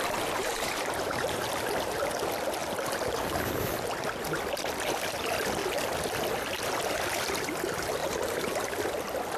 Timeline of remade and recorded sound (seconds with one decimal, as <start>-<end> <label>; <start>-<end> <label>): 0.0-0.4 recorded; 0.4-1.5 remade; 1.5-8.0 recorded; 8.0-8.9 remade; 8.9-9.4 recorded

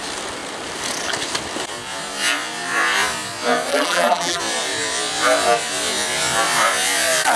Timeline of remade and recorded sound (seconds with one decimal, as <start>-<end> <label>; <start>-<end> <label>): 0.0-3.7 recorded; 3.7-4.4 remade; 4.4-7.4 recorded

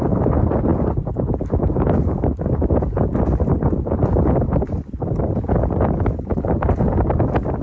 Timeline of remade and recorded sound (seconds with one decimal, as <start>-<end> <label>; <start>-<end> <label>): 0.0-6.3 recorded; 6.3-6.9 remade; 6.9-7.6 recorded